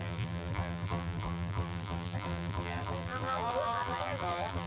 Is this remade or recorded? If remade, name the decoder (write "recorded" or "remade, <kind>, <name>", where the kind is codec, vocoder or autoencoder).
remade, vocoder, BigVGAN v2